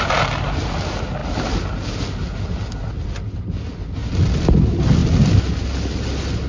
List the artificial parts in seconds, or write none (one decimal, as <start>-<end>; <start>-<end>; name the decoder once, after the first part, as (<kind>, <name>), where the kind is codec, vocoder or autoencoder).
none